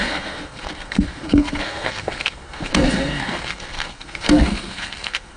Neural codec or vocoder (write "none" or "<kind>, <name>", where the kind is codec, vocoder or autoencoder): codec, SNAC